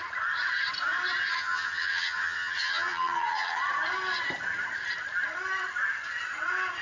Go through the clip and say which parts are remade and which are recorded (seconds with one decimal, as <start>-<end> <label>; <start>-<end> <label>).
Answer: 0.0-1.3 recorded; 1.3-3.6 remade; 3.6-6.8 recorded